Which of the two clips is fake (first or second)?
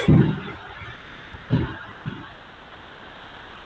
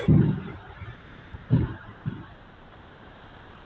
second